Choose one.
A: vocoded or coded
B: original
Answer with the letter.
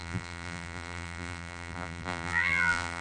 A